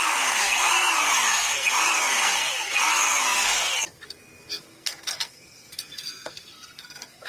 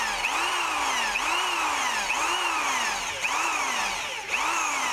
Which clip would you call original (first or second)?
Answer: second